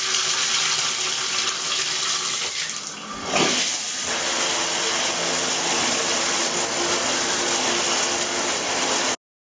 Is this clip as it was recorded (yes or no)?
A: yes